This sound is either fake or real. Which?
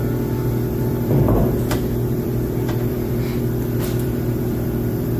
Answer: fake